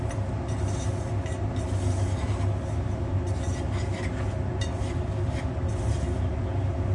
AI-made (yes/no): no